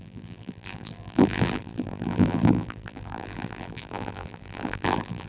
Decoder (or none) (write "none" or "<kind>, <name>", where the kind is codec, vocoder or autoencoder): vocoder, BigVGAN v2